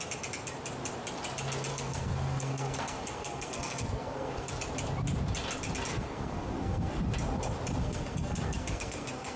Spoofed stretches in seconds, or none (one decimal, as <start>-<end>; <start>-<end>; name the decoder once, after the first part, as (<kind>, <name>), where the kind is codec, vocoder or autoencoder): 1.7-4.5 (codec, SNAC); 5.9-7.0; 7.8-9.4